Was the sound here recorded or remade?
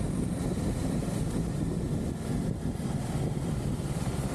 recorded